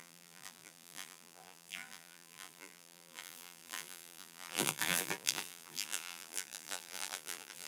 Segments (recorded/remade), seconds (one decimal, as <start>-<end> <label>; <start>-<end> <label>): 0.0-7.7 remade